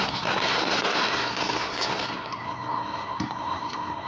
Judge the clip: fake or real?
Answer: fake